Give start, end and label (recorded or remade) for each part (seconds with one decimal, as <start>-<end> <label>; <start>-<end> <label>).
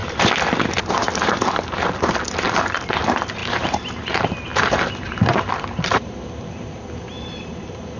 0.0-3.0 remade; 3.0-3.4 recorded; 3.4-4.1 remade; 4.1-4.5 recorded; 4.5-8.0 remade